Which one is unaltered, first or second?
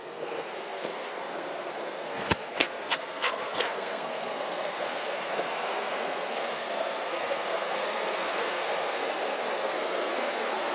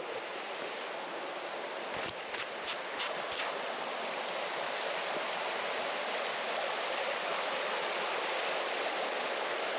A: second